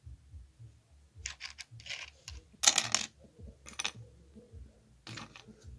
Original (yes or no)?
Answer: yes